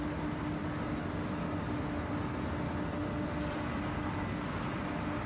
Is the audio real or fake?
real